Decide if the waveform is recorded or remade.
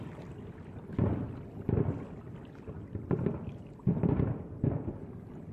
recorded